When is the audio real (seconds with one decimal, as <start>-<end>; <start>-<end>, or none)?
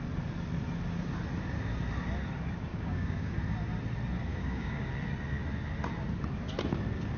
0.0-2.7; 3.3-4.3; 4.9-7.2